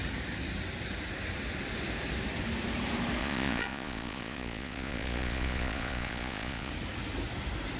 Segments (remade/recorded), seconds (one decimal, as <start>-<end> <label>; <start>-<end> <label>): 0.0-3.2 recorded; 3.2-6.7 remade; 6.7-7.8 recorded